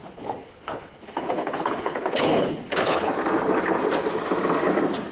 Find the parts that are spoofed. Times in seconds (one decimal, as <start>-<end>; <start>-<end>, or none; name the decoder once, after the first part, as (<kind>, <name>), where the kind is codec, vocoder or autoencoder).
0.0-3.1 (codec, HILCodec)